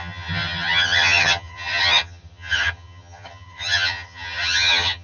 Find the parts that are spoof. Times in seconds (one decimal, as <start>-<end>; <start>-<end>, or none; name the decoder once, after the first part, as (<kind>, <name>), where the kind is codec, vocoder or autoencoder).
0.0-5.0 (vocoder, HiFi-GAN)